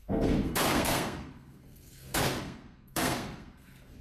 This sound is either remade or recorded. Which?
remade